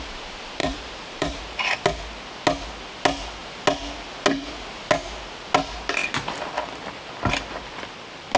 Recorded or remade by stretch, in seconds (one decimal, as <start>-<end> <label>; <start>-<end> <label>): 0.0-0.6 recorded; 0.6-1.6 remade; 1.6-8.4 recorded